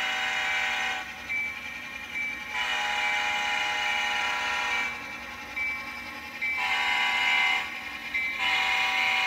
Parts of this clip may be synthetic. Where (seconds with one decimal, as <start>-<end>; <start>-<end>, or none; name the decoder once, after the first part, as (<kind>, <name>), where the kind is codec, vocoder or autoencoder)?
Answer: none